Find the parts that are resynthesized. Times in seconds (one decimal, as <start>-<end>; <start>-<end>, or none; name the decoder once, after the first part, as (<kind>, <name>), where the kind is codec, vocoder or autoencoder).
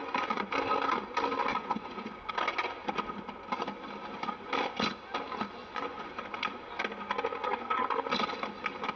0.0-0.5 (vocoder, Vocos); 1.5-2.3; 5.6-6.1